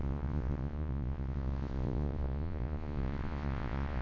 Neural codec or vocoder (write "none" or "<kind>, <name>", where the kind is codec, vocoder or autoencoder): vocoder, Vocos